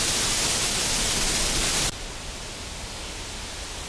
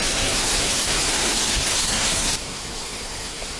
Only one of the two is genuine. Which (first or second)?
first